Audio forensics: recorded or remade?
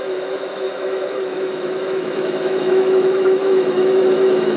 remade